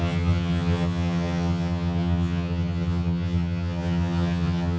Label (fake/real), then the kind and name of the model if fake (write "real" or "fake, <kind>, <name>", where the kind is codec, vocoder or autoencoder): fake, vocoder, HiFi-GAN